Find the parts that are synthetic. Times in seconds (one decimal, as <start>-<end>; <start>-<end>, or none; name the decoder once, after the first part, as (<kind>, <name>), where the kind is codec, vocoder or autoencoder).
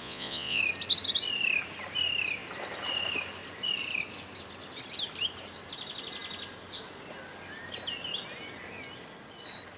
0.0-0.6 (vocoder, Vocos)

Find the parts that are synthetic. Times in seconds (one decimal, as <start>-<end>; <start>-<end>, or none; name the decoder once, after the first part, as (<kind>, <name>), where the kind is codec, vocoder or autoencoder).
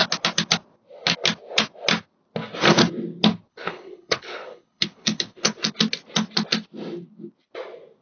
3.5-5.6 (codec, HILCodec)